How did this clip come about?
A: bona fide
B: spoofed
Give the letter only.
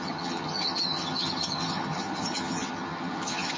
B